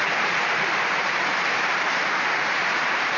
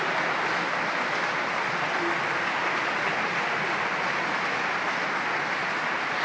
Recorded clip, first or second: second